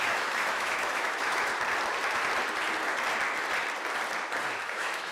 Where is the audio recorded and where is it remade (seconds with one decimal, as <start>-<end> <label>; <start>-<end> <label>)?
0.0-1.5 remade; 1.5-4.6 recorded; 4.6-5.1 remade